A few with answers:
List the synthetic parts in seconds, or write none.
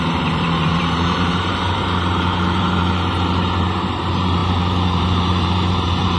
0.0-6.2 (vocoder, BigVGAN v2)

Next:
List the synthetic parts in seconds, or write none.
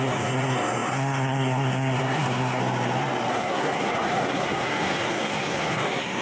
0.0-2.6 (codec, SNAC); 3.3-6.2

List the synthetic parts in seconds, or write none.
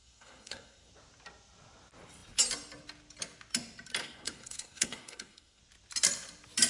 0.0-0.9 (codec, SNAC); 4.0-5.6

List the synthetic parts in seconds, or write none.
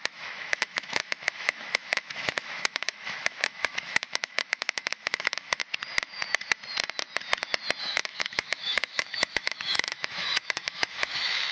0.0-5.6 (autoencoder, DAC-VAE); 7.8-11.5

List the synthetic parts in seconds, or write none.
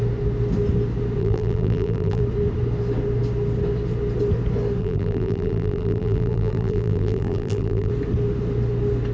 1.2-2.2 (vocoder, BigVGAN v2); 4.8-7.9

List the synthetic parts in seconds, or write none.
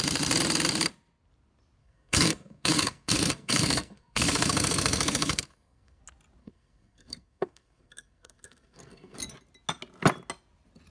1.8-6.0 (codec, SNAC); 6.4-9.2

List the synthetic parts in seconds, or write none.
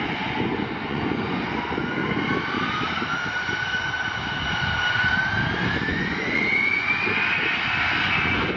0.0-2.0 (vocoder, Vocos); 5.9-7.2; 8.0-8.6